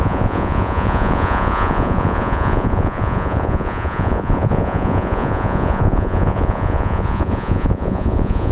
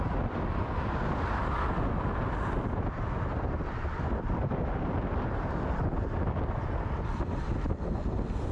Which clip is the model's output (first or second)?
first